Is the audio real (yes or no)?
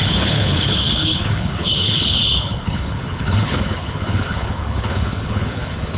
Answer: no